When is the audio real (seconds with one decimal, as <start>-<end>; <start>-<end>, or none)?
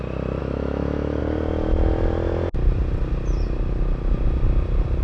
0.0-0.4; 1.2-5.0